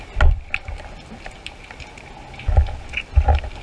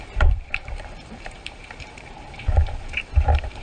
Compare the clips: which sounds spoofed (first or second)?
second